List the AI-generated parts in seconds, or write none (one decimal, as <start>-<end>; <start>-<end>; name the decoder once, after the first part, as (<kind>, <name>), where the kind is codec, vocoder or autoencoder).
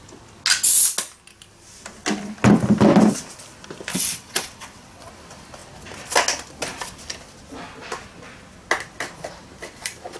3.9-5.1 (vocoder, WaveNeXt)